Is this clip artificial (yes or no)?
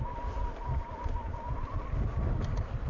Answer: yes